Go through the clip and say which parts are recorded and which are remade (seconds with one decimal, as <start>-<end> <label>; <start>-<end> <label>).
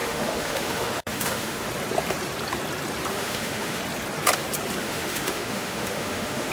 0.0-1.7 remade; 1.7-3.1 recorded; 3.1-3.8 remade; 3.8-4.8 recorded; 4.8-6.5 remade